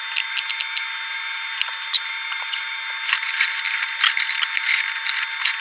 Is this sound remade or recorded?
recorded